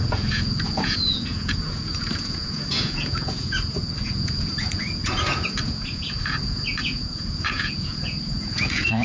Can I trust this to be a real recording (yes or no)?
no